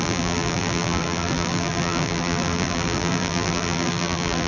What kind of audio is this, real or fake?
fake